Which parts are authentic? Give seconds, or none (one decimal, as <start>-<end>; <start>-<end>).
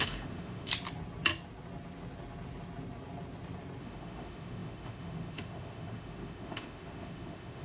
0.7-3.8